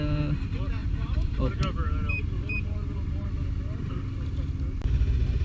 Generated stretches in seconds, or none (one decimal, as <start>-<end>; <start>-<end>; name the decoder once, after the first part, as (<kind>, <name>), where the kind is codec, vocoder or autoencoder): 0.8-4.0 (vocoder, BigVGAN v2)